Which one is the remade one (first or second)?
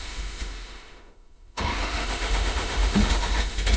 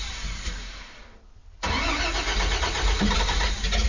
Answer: first